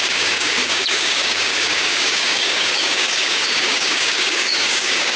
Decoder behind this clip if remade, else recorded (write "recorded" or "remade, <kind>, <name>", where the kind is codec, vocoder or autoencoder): remade, codec, DAC